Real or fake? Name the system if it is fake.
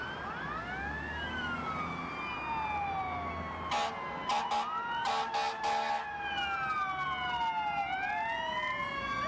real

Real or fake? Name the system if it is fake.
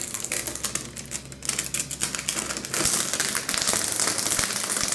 real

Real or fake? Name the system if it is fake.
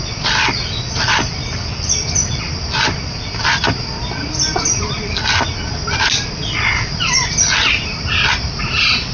real